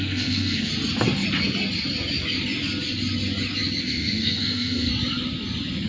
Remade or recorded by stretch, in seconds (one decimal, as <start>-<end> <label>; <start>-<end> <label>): 0.0-0.7 remade; 0.7-3.8 recorded; 3.8-4.9 remade; 4.9-5.9 recorded